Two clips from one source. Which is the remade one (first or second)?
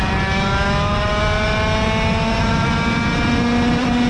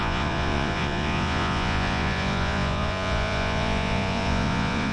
second